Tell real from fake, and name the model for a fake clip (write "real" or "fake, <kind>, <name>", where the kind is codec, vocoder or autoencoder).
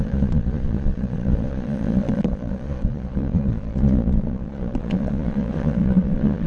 fake, vocoder, Vocos